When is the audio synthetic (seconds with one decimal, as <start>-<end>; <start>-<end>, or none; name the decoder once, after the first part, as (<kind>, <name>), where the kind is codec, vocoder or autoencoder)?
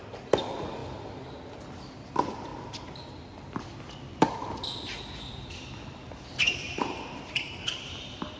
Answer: 0.0-0.8 (vocoder, BigVGAN v2); 2.0-2.5; 4.2-8.4